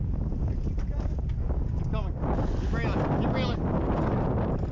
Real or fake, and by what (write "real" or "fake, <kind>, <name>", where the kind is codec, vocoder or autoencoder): real